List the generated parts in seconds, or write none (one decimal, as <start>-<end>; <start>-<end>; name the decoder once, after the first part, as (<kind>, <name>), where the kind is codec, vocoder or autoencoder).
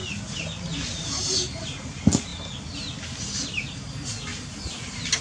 none